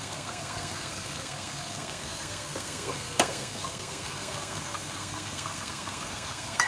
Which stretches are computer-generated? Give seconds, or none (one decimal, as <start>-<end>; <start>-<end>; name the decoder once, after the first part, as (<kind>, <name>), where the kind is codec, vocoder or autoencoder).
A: 0.0-6.7 (codec, SNAC)